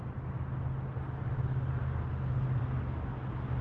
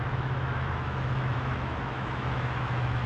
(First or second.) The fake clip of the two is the second